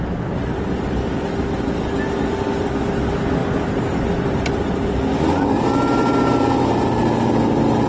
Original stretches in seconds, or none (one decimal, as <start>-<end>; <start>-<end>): 0.0-7.9